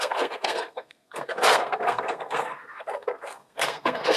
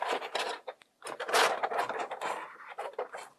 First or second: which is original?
second